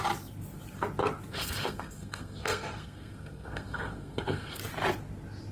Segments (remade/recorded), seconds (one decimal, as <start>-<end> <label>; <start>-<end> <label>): 0.0-1.3 recorded; 1.3-4.6 remade; 4.6-5.5 recorded